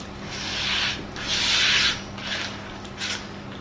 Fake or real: real